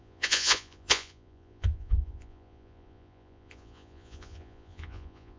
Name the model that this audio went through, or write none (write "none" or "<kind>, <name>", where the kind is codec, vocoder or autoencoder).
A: vocoder, Vocos